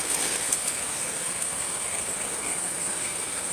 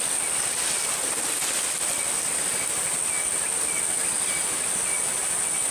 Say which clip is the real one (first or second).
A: second